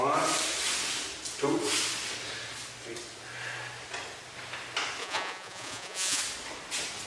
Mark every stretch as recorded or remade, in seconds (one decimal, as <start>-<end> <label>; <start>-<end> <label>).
0.0-5.0 recorded; 5.0-6.2 remade; 6.2-7.1 recorded